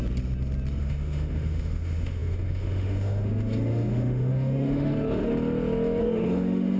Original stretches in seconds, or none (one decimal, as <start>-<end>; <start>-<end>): 0.0-0.8; 5.3-6.0